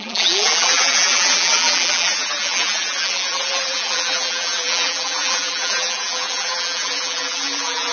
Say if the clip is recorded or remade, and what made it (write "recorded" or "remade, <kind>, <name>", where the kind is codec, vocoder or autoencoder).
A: remade, vocoder, BigVGAN v2